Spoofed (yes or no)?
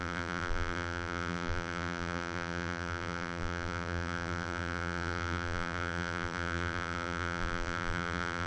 yes